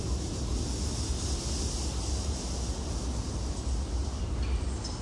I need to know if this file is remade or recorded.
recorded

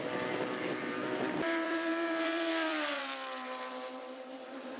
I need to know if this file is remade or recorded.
remade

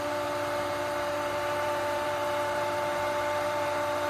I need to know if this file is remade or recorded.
remade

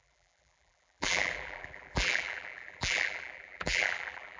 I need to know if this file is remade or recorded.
remade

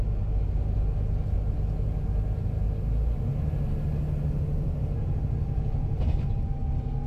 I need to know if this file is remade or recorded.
recorded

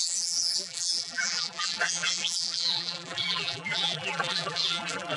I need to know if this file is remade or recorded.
remade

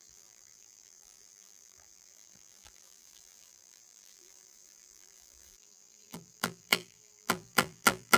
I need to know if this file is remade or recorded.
remade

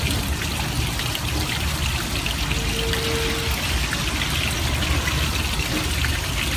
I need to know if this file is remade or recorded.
recorded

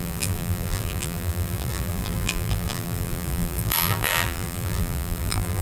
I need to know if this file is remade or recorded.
remade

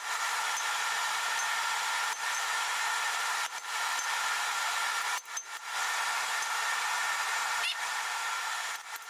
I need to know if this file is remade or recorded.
remade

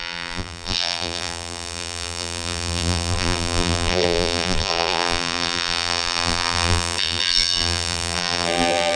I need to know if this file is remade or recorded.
remade